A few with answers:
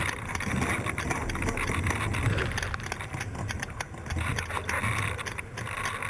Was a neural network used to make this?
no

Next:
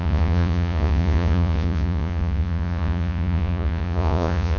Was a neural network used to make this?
yes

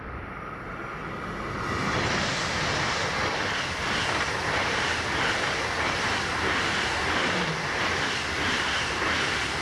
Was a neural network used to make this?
no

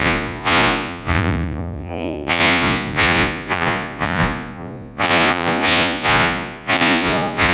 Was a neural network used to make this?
yes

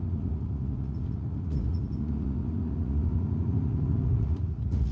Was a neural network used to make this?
yes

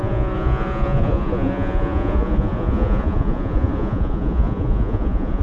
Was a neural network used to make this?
yes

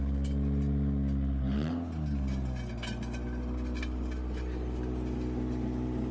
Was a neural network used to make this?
no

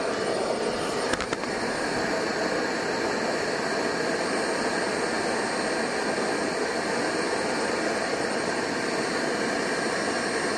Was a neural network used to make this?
no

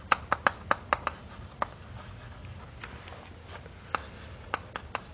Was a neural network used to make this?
no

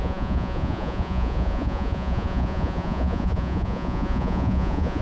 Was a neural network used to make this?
yes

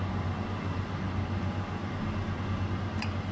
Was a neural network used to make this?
no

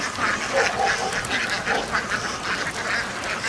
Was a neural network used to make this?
no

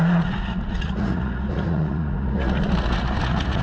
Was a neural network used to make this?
yes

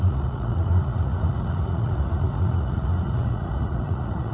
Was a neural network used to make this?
yes